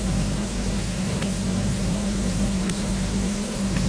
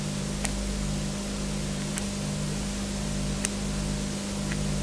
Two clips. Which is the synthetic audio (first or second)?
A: first